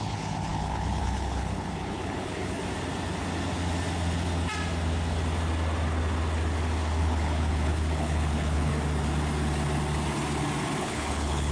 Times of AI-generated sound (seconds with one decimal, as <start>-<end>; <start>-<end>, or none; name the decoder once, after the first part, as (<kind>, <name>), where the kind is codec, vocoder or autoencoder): 0.0-2.6 (codec, HILCodec); 7.0-8.7; 10.8-11.5